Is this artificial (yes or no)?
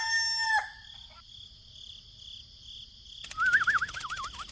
no